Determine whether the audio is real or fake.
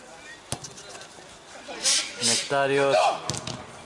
real